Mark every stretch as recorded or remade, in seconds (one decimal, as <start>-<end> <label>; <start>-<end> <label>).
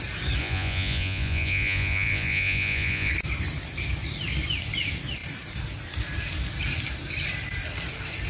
0.0-0.4 recorded; 0.4-3.1 remade; 3.1-8.3 recorded